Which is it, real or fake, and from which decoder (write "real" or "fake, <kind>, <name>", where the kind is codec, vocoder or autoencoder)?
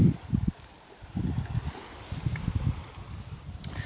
real